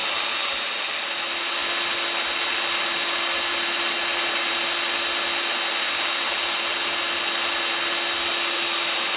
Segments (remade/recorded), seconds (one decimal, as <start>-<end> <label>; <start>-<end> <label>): 0.0-9.2 recorded